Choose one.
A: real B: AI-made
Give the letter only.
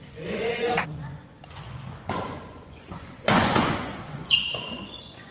B